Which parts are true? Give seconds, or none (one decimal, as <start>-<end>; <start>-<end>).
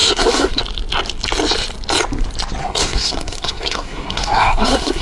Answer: 0.6-2.6